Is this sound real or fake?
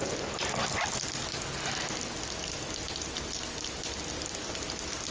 real